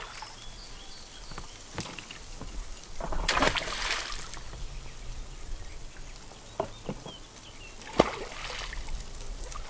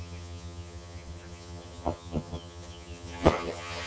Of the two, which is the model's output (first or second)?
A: second